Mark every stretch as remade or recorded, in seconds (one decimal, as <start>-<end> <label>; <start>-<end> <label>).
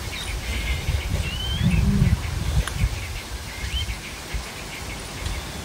0.0-5.6 recorded